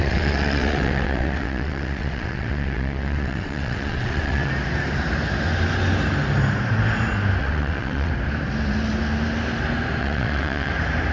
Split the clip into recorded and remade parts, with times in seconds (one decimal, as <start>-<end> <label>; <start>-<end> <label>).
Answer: 0.0-4.5 remade; 4.5-7.4 recorded; 7.4-8.1 remade; 8.1-10.0 recorded; 10.0-10.7 remade; 10.7-11.1 recorded